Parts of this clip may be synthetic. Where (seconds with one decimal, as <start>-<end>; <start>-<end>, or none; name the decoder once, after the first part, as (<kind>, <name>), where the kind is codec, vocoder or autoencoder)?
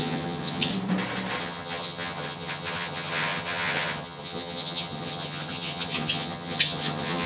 0.0-0.7 (vocoder, HiFi-GAN); 1.4-7.3